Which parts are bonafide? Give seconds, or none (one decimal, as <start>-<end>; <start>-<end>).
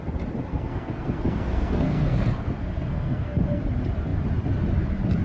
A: 0.0-0.5; 3.6-5.2